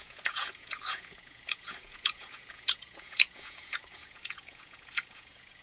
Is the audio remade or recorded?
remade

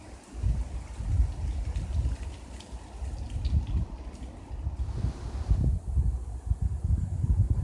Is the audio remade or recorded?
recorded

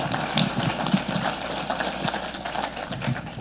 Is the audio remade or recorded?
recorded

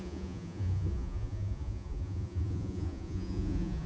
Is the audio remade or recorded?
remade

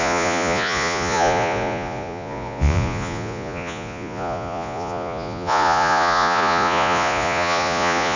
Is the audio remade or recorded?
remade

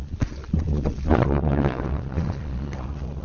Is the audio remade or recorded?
remade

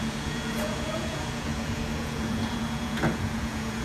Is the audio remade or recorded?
remade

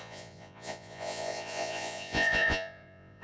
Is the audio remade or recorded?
remade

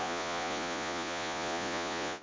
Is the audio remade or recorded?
remade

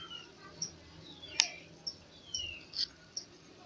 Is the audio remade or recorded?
recorded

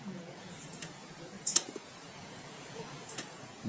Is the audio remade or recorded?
remade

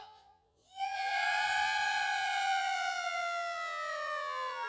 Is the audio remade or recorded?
remade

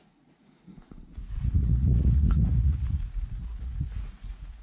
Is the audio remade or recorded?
remade